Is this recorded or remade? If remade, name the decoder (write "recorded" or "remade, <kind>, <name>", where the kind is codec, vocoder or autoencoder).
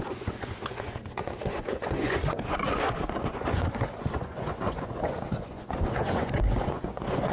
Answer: remade, vocoder, Vocos